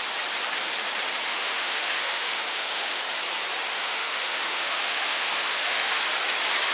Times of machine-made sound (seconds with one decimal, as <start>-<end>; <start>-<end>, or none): 1.3-3.0; 3.7-6.0